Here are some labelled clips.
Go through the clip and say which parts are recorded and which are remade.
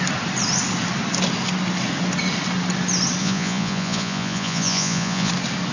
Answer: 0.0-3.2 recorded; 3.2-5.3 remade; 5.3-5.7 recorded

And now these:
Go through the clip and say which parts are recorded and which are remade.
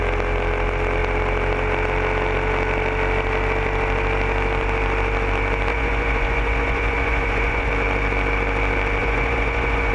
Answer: 0.0-5.7 recorded; 5.7-7.7 remade; 7.7-9.0 recorded; 9.0-9.9 remade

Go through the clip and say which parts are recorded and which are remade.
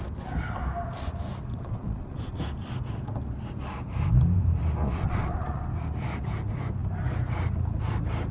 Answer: 0.0-1.5 recorded; 1.5-2.4 remade; 2.4-4.8 recorded; 4.8-5.6 remade; 5.6-8.3 recorded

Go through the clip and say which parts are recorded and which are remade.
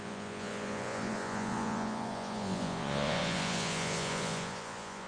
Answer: 0.0-5.1 remade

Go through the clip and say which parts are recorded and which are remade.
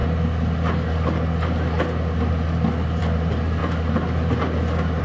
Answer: 0.0-5.0 recorded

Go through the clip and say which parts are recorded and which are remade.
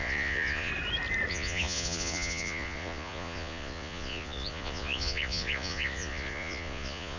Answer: 0.0-0.7 remade; 0.7-1.3 recorded; 1.3-7.2 remade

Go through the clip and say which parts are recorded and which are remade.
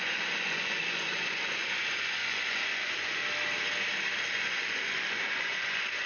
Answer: 0.0-3.2 remade; 3.2-4.3 recorded; 4.3-6.1 remade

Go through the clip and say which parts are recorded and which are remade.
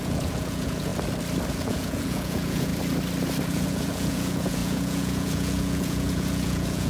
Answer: 0.0-0.9 remade; 0.9-1.5 recorded; 1.5-2.7 remade; 2.7-3.5 recorded; 3.5-6.9 remade